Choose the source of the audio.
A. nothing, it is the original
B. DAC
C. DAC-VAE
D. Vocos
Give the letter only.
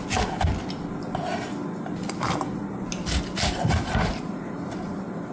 A